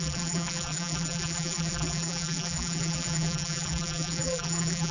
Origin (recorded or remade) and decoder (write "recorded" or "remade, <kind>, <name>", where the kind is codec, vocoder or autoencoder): remade, vocoder, BigVGAN v2